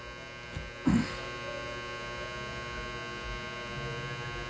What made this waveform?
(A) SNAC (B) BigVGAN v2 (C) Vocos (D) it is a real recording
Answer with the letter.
D